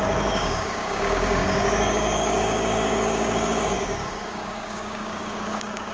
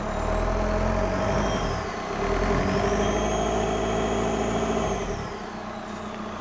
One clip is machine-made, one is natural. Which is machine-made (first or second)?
first